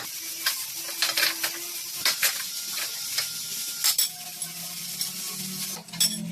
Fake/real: real